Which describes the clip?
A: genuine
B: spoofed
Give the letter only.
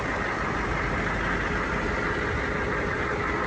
A